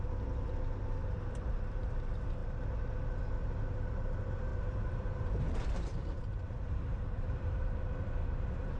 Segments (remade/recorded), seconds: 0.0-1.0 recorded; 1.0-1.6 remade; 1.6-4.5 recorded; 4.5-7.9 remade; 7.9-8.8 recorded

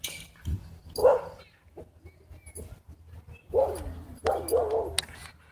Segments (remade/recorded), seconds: 0.0-5.5 recorded